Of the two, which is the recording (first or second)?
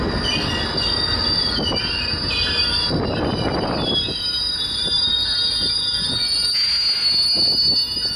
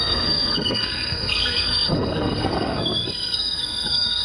first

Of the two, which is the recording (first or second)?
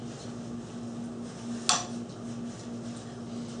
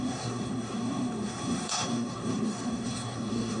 first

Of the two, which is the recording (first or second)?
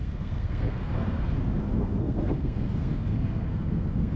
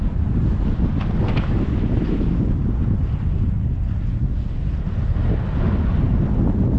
second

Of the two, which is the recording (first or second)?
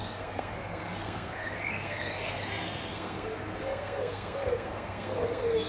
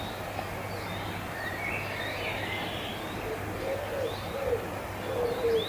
second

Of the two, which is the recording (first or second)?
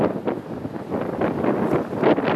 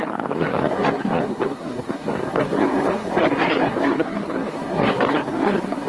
first